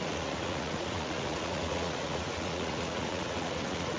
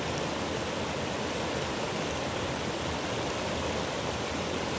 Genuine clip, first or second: second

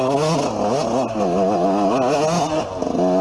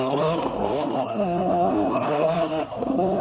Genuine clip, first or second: first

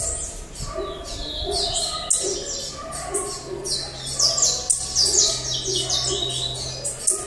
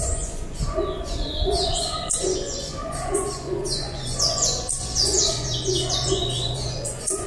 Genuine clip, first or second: first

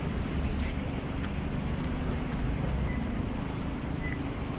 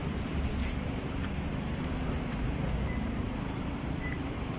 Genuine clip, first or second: first